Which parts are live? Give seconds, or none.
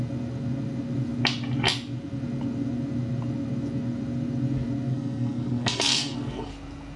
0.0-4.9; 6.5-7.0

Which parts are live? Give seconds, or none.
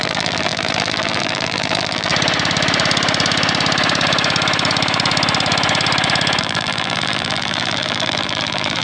2.1-6.4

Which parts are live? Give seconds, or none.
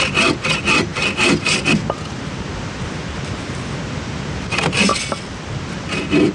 0.0-6.3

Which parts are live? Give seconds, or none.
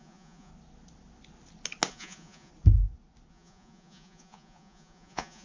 0.5-1.9; 2.5-3.3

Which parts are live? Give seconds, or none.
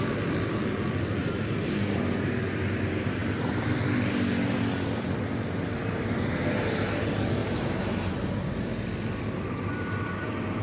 0.0-1.2; 2.0-5.8; 7.0-7.4; 8.1-10.6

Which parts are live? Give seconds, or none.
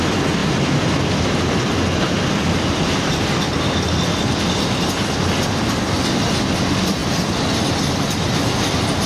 0.0-9.1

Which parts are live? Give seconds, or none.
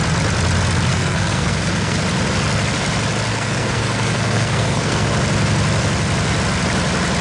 0.0-0.9; 2.0-3.3; 5.1-7.2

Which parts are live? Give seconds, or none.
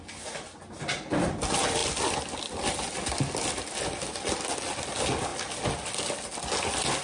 0.0-7.0